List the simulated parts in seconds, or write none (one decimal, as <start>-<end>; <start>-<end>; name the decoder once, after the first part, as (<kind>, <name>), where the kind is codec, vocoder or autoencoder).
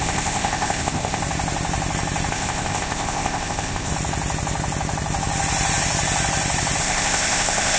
0.0-1.2 (codec, ZipCodec); 2.3-3.9; 6.8-7.8